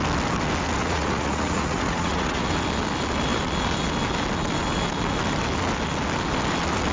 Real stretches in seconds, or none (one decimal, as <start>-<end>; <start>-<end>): 0.0-0.8; 2.5-6.9